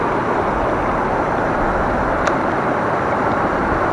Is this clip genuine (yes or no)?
yes